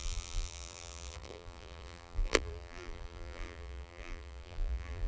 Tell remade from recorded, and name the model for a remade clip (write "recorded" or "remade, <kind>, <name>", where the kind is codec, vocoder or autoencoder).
remade, vocoder, BigVGAN v2